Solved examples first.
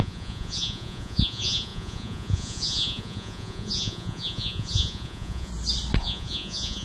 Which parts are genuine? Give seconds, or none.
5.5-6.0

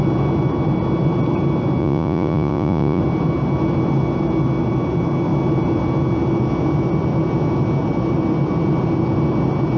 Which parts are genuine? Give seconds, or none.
0.0-1.8; 3.0-9.8

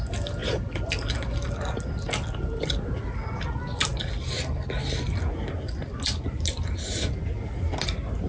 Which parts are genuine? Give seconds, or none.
0.0-8.3

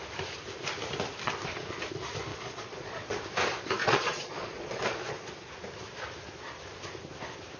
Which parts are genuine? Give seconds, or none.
0.0-2.3; 3.2-3.8; 5.3-7.6

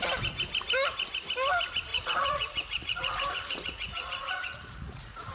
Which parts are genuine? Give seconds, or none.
0.0-1.9

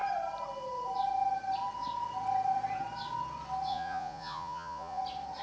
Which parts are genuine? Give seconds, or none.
0.0-3.7; 5.0-5.4

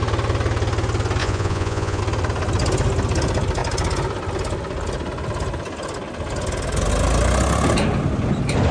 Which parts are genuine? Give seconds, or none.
0.0-1.2; 2.0-8.7

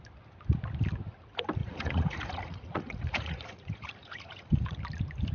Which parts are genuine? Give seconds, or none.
0.0-1.6; 4.8-5.3